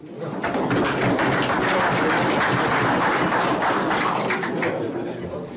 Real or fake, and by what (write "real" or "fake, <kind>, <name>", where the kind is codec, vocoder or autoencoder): real